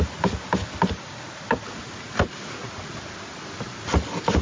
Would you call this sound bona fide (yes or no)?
yes